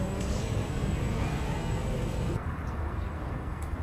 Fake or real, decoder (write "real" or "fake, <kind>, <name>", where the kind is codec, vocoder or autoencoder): fake, codec, SNAC